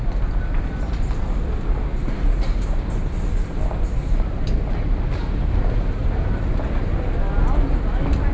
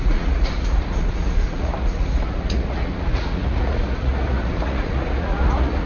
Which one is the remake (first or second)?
second